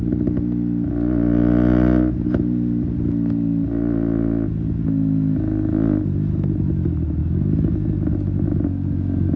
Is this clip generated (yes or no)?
no